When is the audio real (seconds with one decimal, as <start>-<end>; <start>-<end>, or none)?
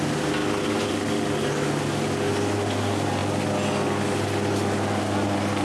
0.0-5.6